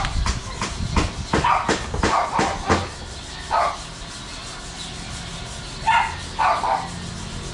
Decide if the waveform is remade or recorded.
recorded